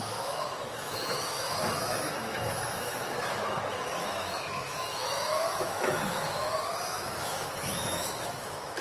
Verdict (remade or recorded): remade